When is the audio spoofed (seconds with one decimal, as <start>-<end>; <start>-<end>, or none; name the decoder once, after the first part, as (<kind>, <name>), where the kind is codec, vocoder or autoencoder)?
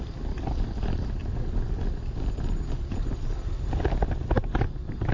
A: none